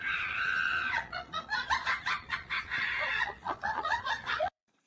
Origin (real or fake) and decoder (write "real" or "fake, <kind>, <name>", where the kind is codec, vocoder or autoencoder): fake, vocoder, Vocos